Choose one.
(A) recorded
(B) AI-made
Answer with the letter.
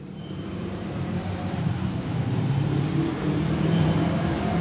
B